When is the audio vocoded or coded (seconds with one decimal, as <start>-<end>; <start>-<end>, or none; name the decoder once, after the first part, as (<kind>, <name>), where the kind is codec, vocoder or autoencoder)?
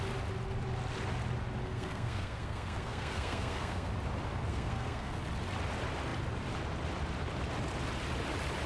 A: 1.6-3.9 (codec, SNAC); 4.5-5.2